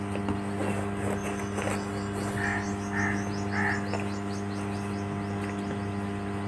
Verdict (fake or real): real